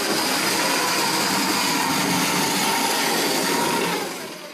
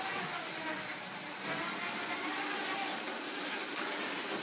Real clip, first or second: first